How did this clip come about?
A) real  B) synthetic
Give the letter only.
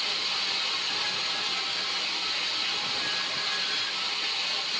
A